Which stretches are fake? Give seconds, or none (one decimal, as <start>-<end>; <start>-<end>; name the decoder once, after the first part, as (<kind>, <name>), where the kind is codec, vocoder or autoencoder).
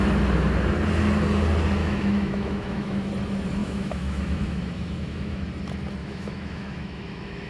1.8-3.1 (autoencoder, DAC-VAE); 3.6-5.4; 6.0-7.5